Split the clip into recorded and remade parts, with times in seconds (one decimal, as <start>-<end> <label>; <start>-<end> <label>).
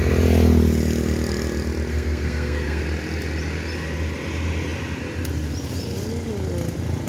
0.0-1.9 recorded; 1.9-2.8 remade; 2.8-7.1 recorded